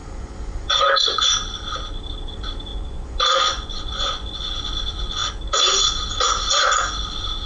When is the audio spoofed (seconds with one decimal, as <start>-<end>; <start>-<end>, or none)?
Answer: 0.0-1.3; 2.7-4.4